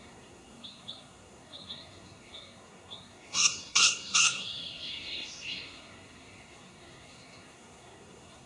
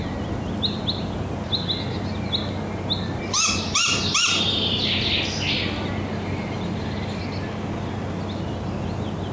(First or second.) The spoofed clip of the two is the first